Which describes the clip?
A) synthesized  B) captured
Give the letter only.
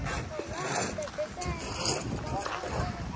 B